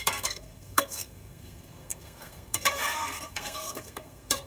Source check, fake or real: fake